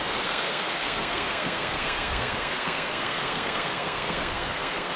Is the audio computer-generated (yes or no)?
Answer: yes